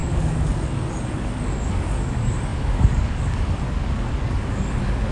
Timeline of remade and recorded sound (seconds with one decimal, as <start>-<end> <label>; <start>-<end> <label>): 0.0-5.1 remade